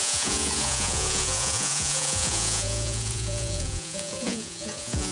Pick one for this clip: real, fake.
fake